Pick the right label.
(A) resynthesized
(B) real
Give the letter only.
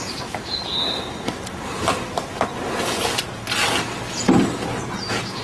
B